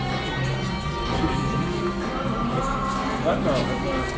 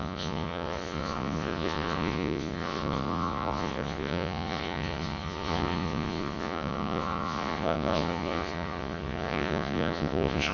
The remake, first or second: second